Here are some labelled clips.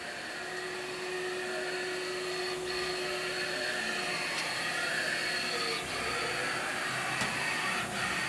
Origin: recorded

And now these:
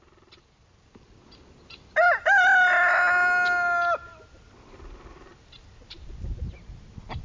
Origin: recorded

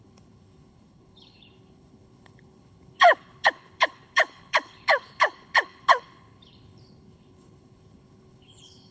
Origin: remade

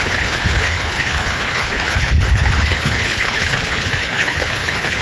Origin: remade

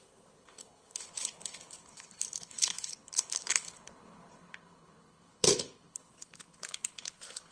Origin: remade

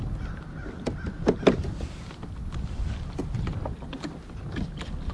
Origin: recorded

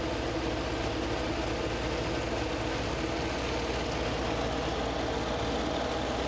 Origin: recorded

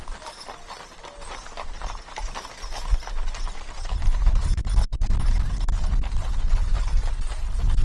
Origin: recorded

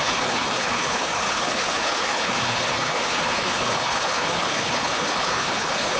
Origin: remade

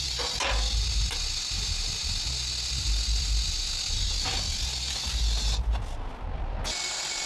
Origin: recorded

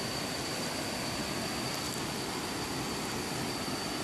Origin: recorded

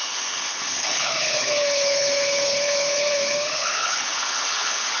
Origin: remade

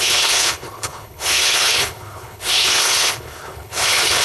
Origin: remade